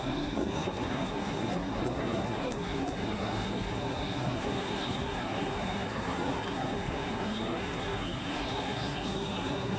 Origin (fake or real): fake